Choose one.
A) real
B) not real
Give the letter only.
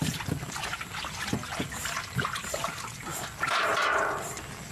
A